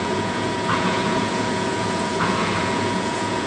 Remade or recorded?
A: remade